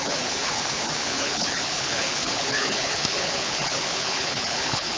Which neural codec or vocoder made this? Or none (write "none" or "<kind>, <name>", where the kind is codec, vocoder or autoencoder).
codec, HILCodec